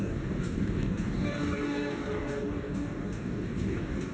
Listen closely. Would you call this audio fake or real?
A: fake